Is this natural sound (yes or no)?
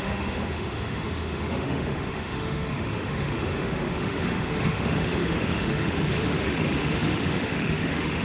no